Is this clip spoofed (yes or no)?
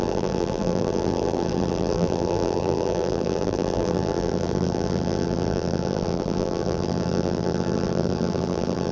yes